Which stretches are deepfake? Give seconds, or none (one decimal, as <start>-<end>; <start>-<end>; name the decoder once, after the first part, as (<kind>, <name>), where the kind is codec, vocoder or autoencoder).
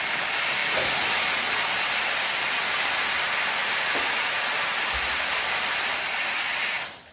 none